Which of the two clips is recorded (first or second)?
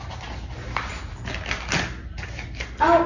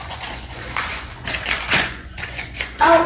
first